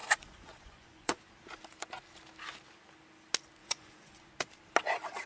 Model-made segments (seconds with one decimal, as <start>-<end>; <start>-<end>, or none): 0.0-1.3; 3.6-4.3